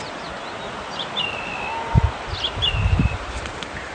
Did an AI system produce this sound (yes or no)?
no